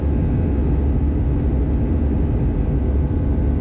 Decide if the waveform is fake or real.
real